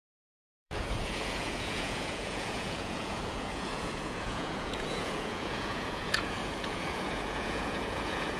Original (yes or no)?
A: no